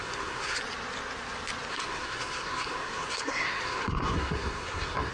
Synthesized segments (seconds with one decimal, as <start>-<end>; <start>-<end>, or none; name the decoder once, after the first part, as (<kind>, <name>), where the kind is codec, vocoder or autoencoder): 0.0-0.6 (codec, SNAC); 1.7-5.1